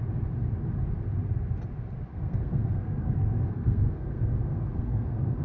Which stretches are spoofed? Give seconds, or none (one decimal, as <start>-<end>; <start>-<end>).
2.1-5.4